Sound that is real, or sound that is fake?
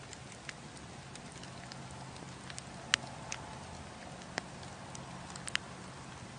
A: real